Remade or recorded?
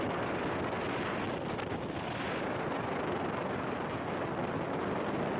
recorded